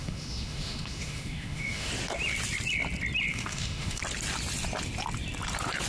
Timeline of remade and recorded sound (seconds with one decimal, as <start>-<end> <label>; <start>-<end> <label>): 0.0-1.9 remade; 1.9-3.3 recorded; 3.3-4.0 remade; 4.0-5.9 recorded